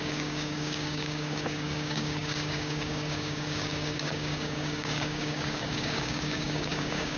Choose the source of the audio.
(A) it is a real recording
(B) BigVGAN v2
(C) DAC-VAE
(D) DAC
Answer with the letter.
D